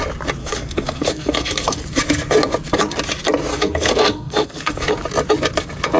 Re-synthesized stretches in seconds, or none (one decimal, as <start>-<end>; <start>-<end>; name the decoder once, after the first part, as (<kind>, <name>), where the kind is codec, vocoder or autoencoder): 0.4-1.8 (codec, SNAC); 3.5-4.9